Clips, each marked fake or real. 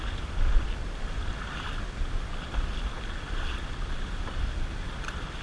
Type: real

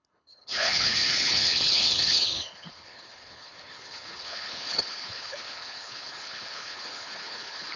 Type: fake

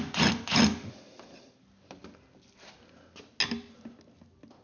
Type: real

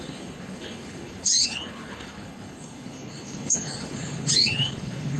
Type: fake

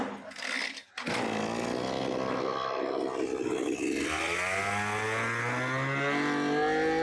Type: real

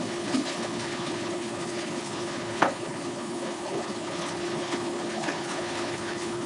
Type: fake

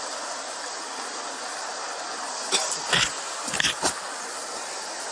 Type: real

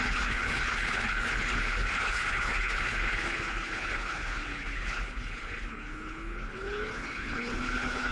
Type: fake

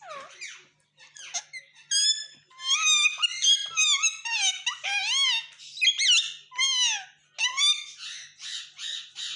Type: real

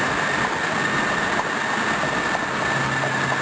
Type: real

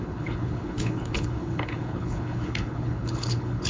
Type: fake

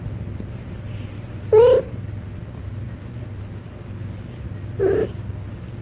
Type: real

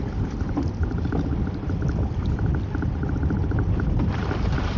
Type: real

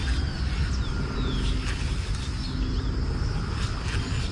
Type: real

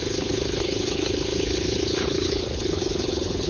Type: fake